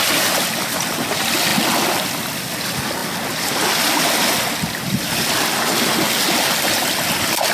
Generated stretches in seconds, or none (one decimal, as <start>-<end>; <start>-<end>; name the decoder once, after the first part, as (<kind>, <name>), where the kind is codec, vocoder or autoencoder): none